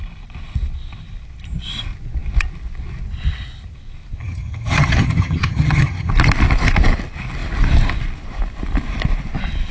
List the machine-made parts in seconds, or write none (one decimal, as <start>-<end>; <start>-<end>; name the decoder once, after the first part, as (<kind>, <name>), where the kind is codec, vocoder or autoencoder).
4.2-6.1 (vocoder, HiFi-GAN)